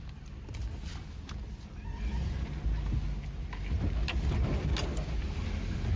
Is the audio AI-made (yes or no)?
no